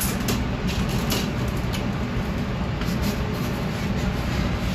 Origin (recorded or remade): recorded